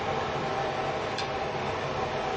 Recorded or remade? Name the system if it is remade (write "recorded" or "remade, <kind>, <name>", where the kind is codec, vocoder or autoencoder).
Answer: recorded